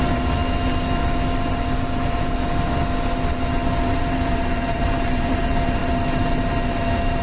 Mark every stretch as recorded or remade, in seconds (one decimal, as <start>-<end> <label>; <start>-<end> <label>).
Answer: 0.0-0.4 remade; 0.4-3.9 recorded; 3.9-7.2 remade